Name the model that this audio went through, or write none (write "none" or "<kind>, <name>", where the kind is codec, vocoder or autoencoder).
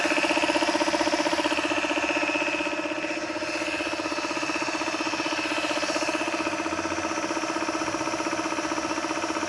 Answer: none